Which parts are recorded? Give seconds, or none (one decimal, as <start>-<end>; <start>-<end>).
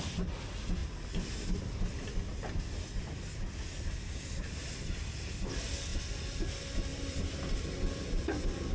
0.0-0.8; 1.6-2.3; 3.3-5.9; 6.5-6.9; 7.6-8.7